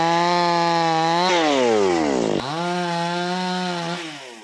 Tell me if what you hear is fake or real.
real